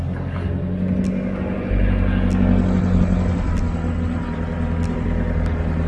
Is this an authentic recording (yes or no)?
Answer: yes